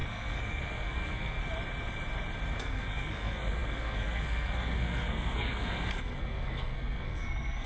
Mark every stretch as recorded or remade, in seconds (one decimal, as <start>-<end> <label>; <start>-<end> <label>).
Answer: 0.0-1.4 remade; 1.4-2.6 recorded; 2.6-7.7 remade